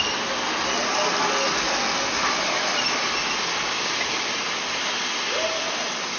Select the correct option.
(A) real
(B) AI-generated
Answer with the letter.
A